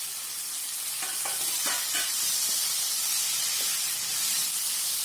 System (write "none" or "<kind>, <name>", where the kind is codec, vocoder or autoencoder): none